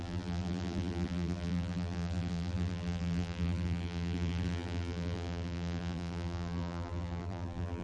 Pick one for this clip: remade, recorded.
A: remade